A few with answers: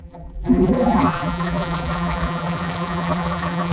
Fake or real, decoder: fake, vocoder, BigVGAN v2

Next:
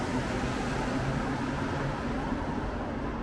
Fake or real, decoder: real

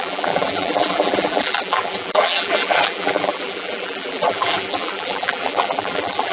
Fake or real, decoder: fake, vocoder, BigVGAN v2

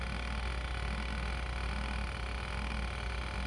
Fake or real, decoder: real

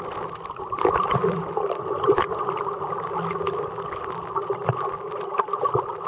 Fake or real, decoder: real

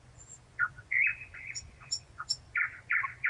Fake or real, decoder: fake, vocoder, Vocos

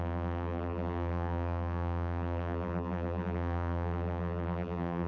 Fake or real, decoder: fake, vocoder, BigVGAN v2